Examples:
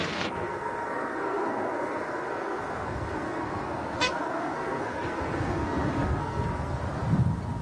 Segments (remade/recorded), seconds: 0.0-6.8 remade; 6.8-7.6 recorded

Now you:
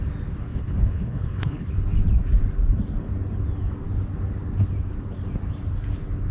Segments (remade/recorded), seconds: 0.0-0.5 recorded; 0.5-1.7 remade; 1.7-6.3 recorded

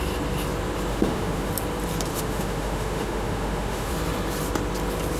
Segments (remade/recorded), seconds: 0.0-0.9 recorded; 0.9-1.5 remade; 1.5-2.1 recorded; 2.1-3.9 remade; 3.9-5.2 recorded

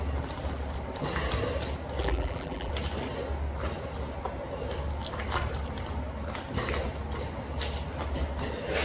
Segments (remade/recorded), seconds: 0.0-2.0 recorded; 2.0-2.7 remade; 2.7-8.8 recorded

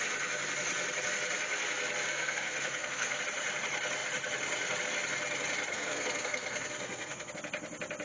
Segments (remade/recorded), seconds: 0.0-2.1 recorded; 2.1-3.2 remade; 3.2-5.7 recorded; 5.7-7.3 remade; 7.3-8.0 recorded